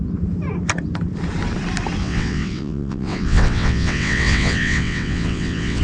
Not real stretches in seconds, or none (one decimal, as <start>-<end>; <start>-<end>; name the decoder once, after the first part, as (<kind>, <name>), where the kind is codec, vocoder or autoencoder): 2.0-5.8 (vocoder, WaveNeXt)